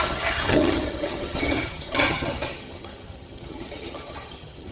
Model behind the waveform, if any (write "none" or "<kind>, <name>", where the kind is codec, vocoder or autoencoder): vocoder, HiFi-GAN